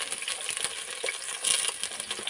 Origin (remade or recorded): recorded